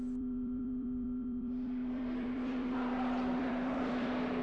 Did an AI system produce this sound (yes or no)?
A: yes